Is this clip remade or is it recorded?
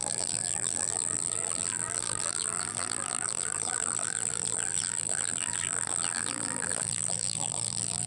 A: remade